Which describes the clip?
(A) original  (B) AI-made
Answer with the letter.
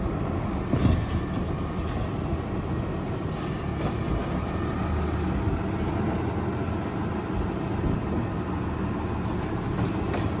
A